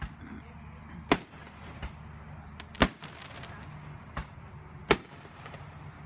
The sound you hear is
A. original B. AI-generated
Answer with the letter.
A